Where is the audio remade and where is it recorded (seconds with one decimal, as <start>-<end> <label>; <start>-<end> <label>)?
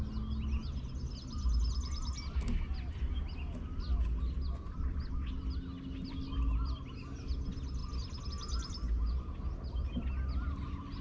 0.0-11.0 recorded